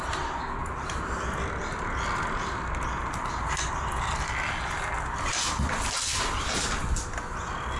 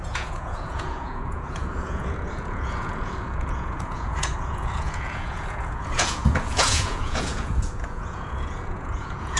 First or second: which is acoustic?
first